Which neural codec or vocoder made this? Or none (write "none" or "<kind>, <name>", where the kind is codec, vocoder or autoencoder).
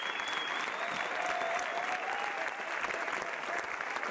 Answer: none